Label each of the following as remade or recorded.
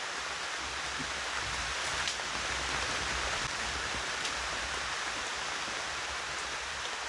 recorded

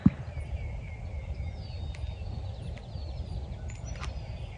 recorded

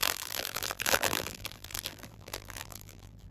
remade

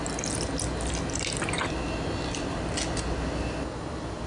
recorded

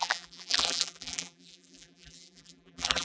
remade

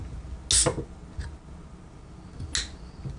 recorded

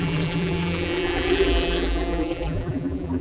remade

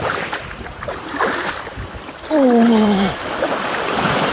remade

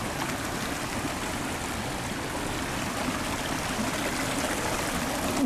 recorded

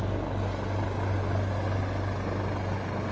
recorded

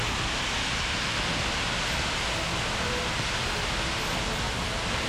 recorded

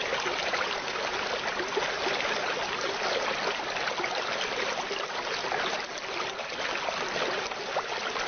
recorded